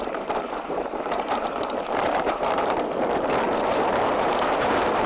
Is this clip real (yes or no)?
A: no